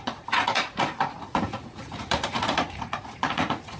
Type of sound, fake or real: fake